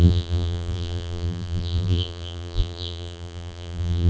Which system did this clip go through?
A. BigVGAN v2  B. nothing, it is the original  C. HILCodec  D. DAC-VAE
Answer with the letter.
A